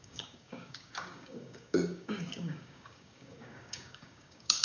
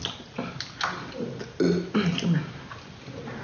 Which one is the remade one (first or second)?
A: first